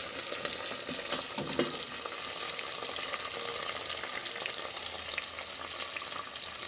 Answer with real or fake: real